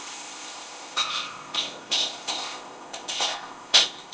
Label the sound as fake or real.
fake